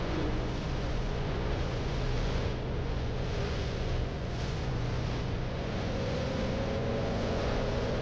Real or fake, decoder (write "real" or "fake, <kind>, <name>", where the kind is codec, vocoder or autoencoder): fake, vocoder, Vocos